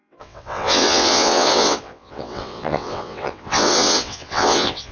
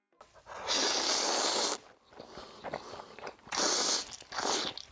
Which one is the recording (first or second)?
second